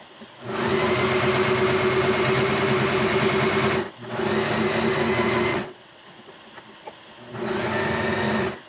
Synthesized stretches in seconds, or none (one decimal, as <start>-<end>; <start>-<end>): 5.5-6.3